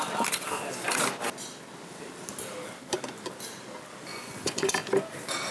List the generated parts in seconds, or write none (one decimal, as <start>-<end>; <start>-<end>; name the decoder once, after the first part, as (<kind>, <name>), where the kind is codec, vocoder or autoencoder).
4.1-4.7 (vocoder, Vocos)